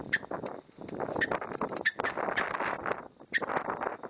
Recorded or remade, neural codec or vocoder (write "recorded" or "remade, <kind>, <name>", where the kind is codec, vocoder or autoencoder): recorded